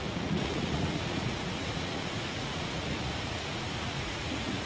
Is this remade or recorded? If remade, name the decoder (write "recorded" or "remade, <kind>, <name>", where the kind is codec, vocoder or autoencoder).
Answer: remade, vocoder, Vocos